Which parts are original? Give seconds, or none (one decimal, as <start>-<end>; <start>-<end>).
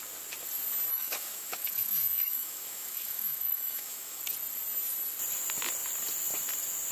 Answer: 0.0-0.9; 4.2-6.9